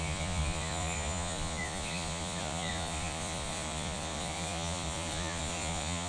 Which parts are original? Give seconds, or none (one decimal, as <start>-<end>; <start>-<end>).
none